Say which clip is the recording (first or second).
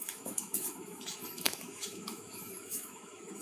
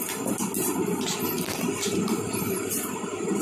second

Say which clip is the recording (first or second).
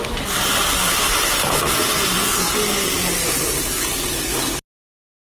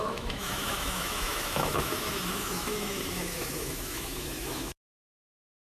first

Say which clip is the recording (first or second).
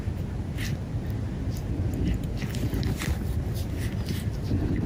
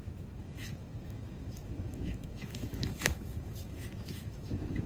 first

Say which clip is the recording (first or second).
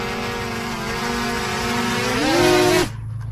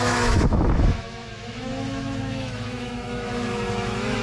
first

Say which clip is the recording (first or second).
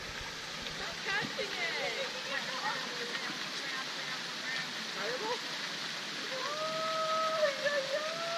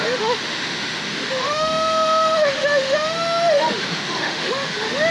first